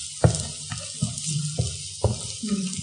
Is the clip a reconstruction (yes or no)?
no